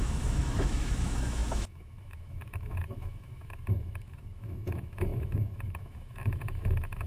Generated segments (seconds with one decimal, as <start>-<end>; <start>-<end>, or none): 0.0-7.1